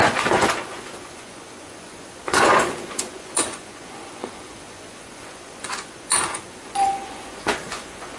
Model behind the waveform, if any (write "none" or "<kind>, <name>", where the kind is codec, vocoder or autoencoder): vocoder, Vocos